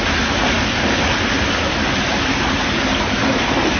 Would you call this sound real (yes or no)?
yes